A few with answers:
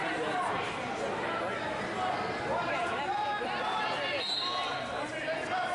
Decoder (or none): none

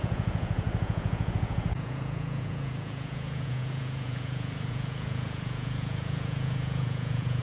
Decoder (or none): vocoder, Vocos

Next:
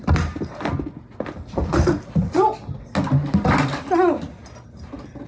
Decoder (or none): none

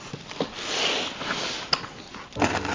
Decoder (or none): none